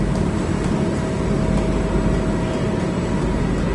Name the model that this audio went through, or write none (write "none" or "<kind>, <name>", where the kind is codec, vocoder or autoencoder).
none